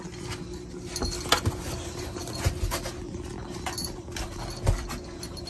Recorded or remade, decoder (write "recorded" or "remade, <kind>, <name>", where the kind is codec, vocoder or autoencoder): recorded